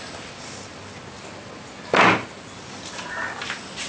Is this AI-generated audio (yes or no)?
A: no